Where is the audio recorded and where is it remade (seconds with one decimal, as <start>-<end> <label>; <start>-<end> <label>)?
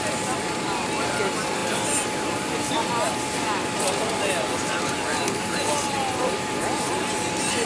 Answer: 0.0-7.7 recorded